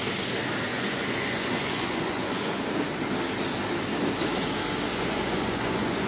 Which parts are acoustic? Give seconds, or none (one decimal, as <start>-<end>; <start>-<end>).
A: 0.0-0.7; 2.6-4.9